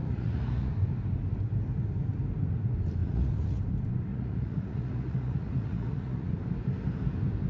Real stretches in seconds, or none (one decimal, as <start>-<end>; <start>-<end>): 0.7-3.0; 3.6-4.1; 6.4-7.5